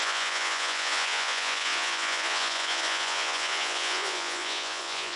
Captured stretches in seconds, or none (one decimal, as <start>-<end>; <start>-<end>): none